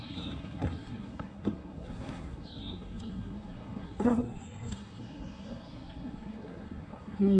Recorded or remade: remade